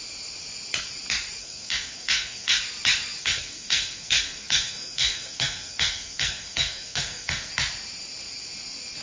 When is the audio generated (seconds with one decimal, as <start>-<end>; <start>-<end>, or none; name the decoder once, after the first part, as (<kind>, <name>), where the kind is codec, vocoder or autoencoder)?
1.4-2.6 (codec, SNAC); 3.2-7.5